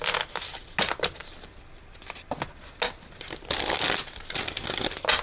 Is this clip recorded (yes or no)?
yes